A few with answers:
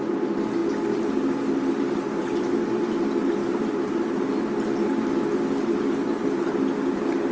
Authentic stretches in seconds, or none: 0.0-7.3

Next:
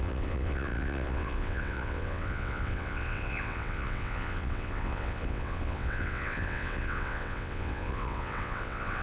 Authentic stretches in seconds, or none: none

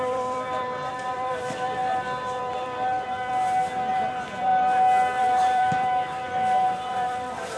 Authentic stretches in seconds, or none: 1.8-2.4; 3.3-3.9; 4.5-5.2

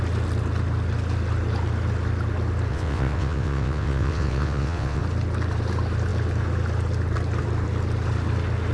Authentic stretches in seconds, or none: 0.0-2.7; 5.0-8.7

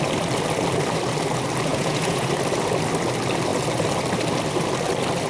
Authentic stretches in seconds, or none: 0.0-1.7; 2.3-5.3

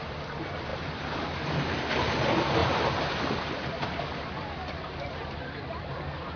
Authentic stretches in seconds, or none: 0.0-0.7; 1.9-2.6; 5.6-6.4